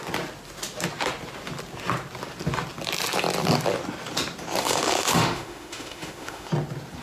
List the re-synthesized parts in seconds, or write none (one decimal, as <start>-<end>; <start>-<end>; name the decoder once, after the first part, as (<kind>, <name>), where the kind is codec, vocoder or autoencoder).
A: 4.6-6.5 (autoencoder, DAC-VAE)